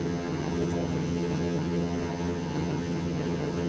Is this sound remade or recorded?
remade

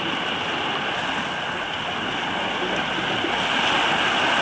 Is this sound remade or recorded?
recorded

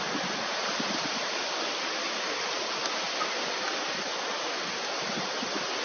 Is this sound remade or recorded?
recorded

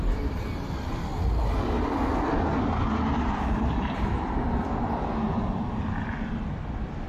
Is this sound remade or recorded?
recorded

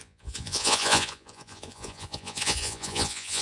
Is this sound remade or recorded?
remade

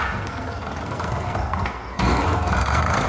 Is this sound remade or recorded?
remade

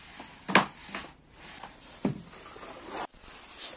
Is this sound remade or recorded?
recorded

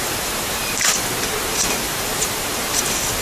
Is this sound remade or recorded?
remade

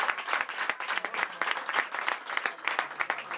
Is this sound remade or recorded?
recorded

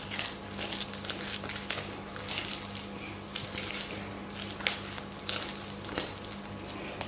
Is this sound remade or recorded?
recorded